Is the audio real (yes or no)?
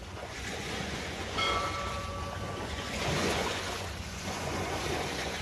no